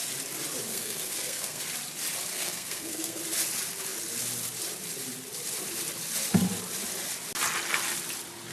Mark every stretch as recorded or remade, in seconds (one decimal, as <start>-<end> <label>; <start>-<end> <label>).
0.0-0.7 recorded; 0.7-1.6 remade; 1.6-2.3 recorded; 2.3-3.2 remade; 3.2-8.5 recorded